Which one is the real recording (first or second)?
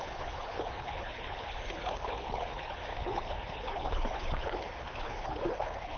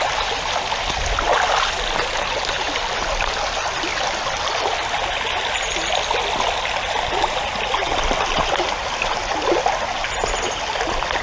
second